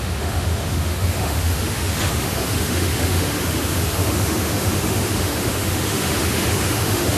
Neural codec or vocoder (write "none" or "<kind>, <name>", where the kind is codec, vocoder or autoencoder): autoencoder, DAC-VAE